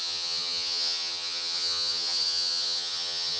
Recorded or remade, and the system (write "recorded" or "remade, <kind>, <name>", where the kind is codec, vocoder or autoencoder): remade, vocoder, HiFi-GAN